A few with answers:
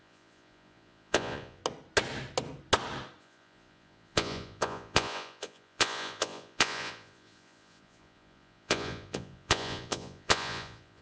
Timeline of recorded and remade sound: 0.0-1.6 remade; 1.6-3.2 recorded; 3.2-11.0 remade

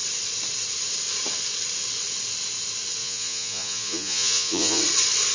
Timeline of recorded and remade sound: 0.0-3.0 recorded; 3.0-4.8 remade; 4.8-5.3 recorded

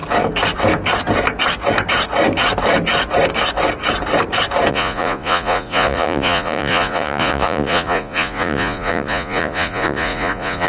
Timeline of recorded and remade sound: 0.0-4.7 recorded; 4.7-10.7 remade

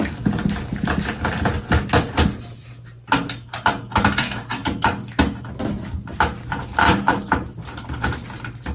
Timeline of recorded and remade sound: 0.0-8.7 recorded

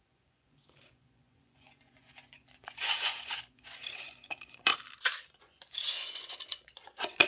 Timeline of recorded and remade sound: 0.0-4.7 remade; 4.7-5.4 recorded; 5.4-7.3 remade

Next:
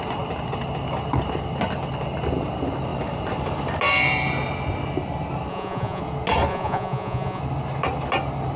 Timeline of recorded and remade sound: 0.0-5.5 recorded; 5.5-6.0 remade; 6.0-6.5 recorded; 6.5-7.4 remade; 7.4-8.6 recorded